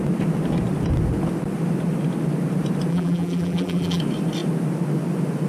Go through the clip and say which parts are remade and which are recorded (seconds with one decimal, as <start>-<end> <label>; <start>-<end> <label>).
0.0-2.9 recorded; 2.9-4.0 remade; 4.0-5.5 recorded